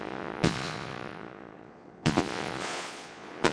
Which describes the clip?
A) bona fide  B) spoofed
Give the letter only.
B